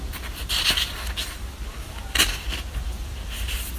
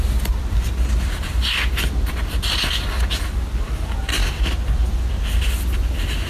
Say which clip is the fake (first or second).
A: first